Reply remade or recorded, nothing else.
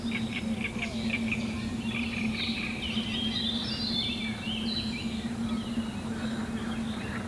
recorded